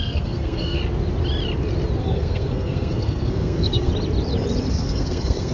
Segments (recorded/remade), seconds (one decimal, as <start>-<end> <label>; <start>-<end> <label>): 0.0-0.8 remade; 0.8-2.0 recorded; 2.0-3.9 remade; 3.9-4.7 recorded; 4.7-5.5 remade

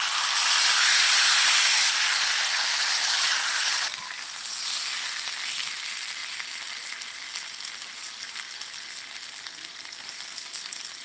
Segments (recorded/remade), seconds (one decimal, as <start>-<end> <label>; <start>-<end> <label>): 0.0-11.0 recorded

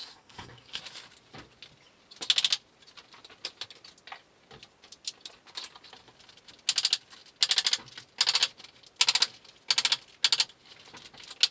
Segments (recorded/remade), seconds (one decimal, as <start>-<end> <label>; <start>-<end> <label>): 0.0-0.8 remade; 0.8-11.5 recorded

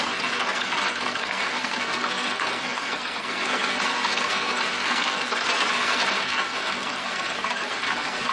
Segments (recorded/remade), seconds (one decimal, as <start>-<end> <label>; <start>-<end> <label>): 0.0-8.3 remade

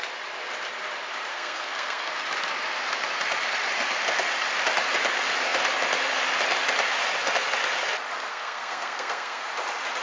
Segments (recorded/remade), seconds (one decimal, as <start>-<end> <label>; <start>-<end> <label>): 0.0-1.3 recorded; 1.3-2.1 remade; 2.1-8.3 recorded; 8.3-9.5 remade; 9.5-10.0 recorded

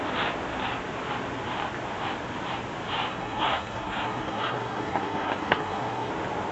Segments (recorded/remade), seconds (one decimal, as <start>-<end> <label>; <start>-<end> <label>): 0.0-3.1 recorded; 3.1-6.1 remade; 6.1-6.5 recorded

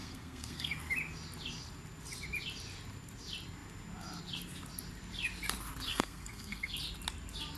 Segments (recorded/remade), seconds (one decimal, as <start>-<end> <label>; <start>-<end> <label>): 0.0-0.7 remade; 0.7-5.9 recorded; 5.9-6.7 remade; 6.7-7.6 recorded

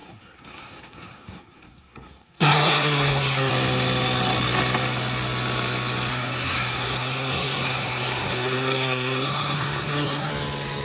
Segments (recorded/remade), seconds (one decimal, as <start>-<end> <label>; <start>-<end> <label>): 0.0-3.5 remade; 3.5-6.1 recorded; 6.1-10.3 remade; 10.3-10.8 recorded